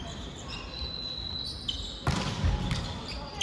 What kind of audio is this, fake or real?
real